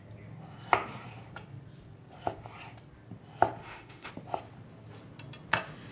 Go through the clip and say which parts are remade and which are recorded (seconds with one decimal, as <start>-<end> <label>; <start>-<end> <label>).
0.0-3.6 recorded; 3.6-4.1 remade; 4.1-5.9 recorded